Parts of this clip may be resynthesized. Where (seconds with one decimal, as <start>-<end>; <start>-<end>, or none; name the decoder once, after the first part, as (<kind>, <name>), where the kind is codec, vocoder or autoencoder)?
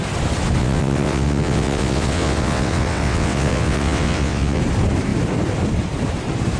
0.6-4.6 (vocoder, WaveNeXt)